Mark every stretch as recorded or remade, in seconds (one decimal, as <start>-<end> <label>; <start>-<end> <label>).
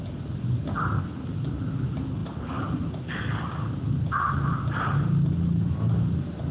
0.0-6.5 recorded